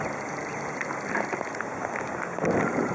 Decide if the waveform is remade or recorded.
recorded